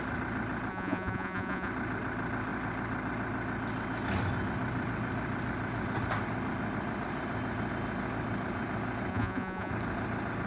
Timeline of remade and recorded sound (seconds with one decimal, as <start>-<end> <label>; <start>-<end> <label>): 0.0-0.7 recorded; 0.7-1.7 remade; 1.7-9.1 recorded; 9.1-9.7 remade; 9.7-10.5 recorded